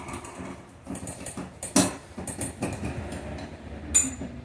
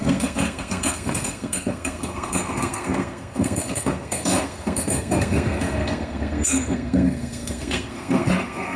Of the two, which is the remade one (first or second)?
second